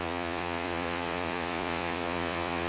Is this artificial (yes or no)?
yes